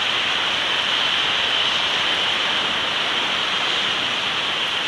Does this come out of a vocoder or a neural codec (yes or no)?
no